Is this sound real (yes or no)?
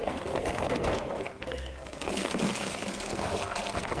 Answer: no